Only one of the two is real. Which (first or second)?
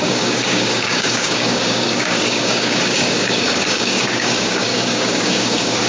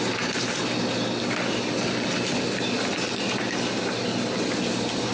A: second